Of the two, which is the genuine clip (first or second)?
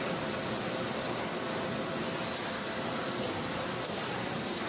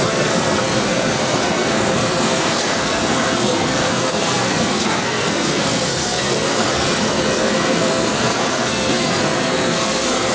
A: first